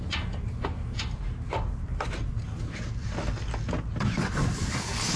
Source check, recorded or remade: recorded